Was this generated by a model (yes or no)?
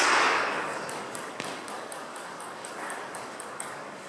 yes